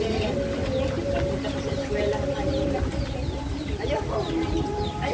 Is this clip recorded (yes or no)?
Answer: yes